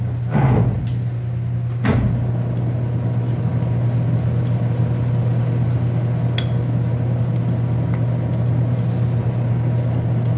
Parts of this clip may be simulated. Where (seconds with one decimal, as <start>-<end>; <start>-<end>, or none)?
none